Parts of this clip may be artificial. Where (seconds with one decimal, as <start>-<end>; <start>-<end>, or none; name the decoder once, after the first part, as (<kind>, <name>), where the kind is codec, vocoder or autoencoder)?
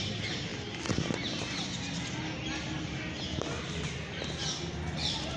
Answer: none